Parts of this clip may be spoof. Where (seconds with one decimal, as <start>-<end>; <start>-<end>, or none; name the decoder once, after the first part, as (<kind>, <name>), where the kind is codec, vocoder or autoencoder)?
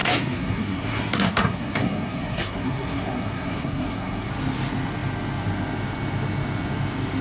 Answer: 0.0-4.3 (codec, SNAC)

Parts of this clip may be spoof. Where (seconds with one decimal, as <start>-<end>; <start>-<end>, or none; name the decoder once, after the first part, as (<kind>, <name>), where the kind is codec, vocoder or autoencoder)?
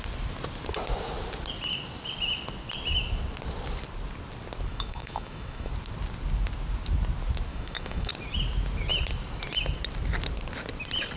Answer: 4.7-5.7 (autoencoder, DAC-VAE); 7.5-8.1